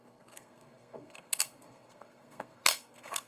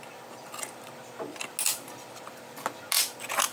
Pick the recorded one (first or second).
second